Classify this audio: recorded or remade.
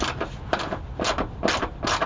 recorded